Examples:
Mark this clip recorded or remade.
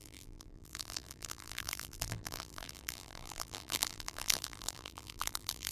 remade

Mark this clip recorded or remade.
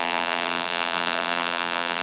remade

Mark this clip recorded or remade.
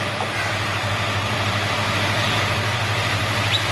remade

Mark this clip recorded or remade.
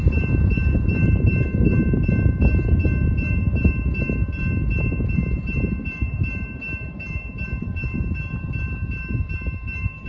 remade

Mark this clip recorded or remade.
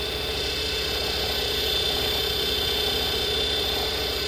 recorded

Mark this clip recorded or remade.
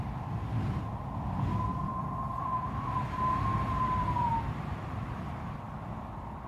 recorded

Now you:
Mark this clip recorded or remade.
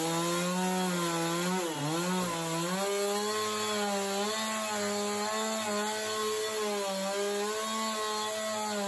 recorded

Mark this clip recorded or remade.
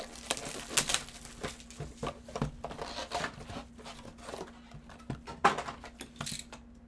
recorded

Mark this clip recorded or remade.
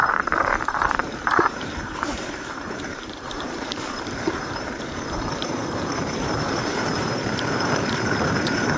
remade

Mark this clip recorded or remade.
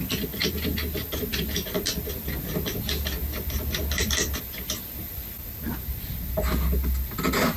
recorded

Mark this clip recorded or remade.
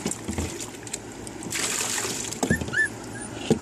remade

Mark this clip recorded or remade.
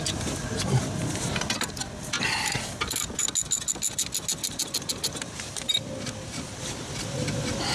recorded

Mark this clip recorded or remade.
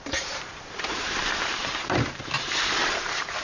remade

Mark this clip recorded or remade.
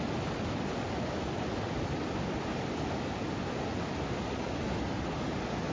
recorded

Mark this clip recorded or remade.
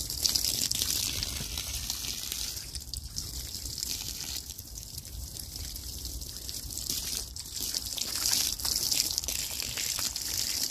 remade